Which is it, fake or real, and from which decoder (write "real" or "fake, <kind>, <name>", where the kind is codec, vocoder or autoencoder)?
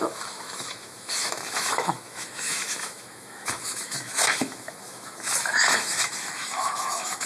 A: fake, autoencoder, DAC-VAE